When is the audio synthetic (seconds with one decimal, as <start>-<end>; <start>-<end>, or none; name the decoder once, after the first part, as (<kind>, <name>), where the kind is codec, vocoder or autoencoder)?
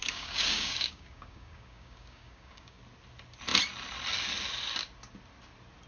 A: 0.0-2.8 (codec, DAC)